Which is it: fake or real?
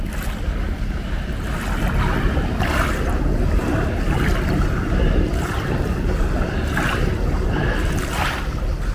real